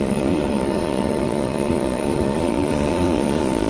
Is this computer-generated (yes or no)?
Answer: yes